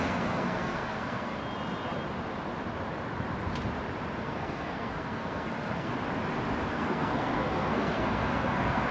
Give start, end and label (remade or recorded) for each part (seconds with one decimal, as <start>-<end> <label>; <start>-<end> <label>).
0.0-1.4 remade; 1.4-4.2 recorded; 4.2-5.9 remade; 5.9-6.7 recorded; 6.7-8.9 remade